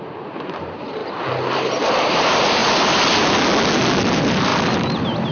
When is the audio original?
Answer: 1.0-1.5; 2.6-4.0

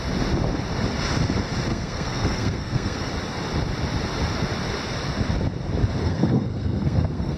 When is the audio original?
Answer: 0.0-1.7; 3.1-6.0

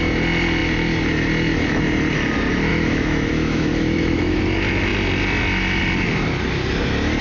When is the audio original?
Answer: 0.0-2.7; 4.4-7.2